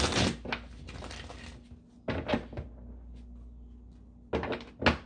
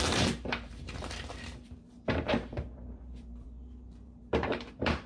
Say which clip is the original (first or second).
first